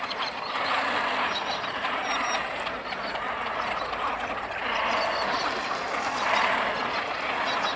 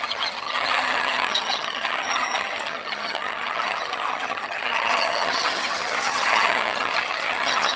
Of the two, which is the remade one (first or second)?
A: second